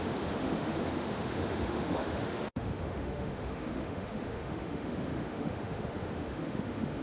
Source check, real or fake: fake